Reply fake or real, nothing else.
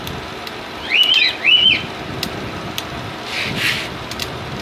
real